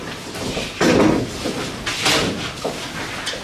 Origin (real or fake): real